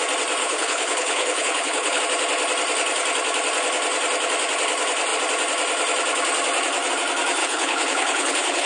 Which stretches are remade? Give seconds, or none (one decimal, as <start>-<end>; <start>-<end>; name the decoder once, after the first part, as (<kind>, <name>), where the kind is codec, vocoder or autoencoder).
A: 0.4-2.0 (codec, HILCodec); 7.4-8.7